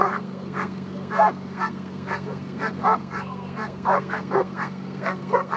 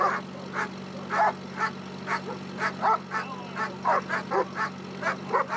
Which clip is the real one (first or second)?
second